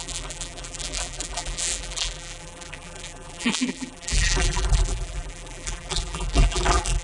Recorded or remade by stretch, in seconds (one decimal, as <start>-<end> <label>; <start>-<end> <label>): 0.0-7.0 remade